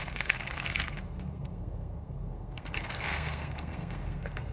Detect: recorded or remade remade